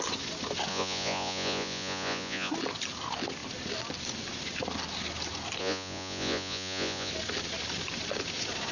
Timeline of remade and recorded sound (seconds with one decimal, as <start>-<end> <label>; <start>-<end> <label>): 0.0-0.7 recorded; 0.7-2.5 remade; 2.5-5.6 recorded; 5.6-7.1 remade; 7.1-8.7 recorded